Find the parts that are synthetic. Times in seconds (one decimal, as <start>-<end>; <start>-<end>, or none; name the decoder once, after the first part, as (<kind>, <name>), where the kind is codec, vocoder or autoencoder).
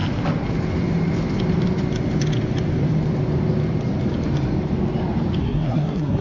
5.4-6.2 (codec, SNAC)